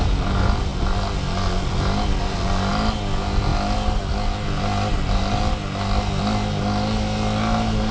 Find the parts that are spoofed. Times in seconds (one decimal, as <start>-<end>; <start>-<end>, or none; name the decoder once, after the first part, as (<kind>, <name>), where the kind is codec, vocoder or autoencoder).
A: none